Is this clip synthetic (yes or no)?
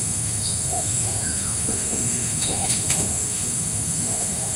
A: yes